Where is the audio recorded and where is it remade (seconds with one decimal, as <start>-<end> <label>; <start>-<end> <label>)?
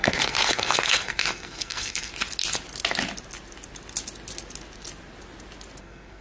0.0-2.1 remade; 2.1-5.8 recorded; 5.8-6.2 remade